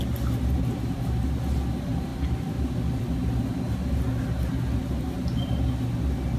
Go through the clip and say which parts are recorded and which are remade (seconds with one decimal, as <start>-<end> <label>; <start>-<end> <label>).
0.0-6.4 recorded